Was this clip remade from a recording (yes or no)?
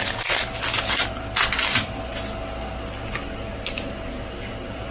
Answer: no